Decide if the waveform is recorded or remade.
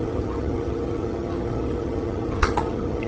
remade